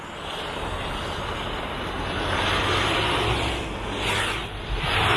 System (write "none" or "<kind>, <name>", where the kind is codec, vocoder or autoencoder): none